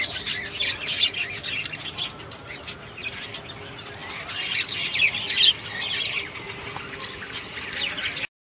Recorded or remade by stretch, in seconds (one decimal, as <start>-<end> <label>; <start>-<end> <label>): 0.0-8.5 recorded